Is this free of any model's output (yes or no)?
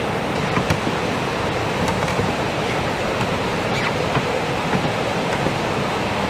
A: yes